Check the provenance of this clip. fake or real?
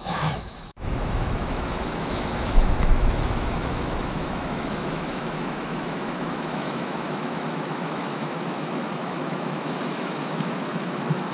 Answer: fake